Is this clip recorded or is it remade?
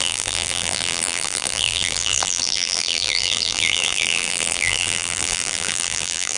remade